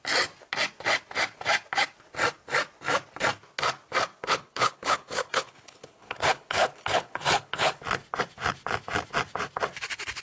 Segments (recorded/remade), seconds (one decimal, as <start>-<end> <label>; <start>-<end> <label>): 0.0-4.2 recorded; 4.2-7.8 remade; 7.8-10.2 recorded